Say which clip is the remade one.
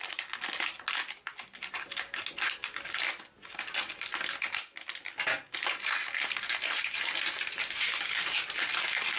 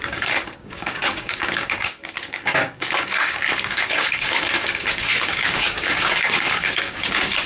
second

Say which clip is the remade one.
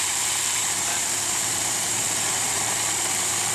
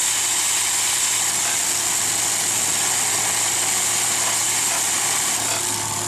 first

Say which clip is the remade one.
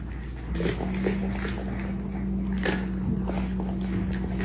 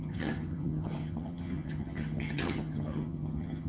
second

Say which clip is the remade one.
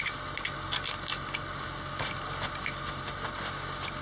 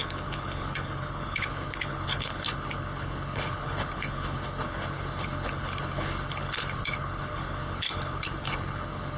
second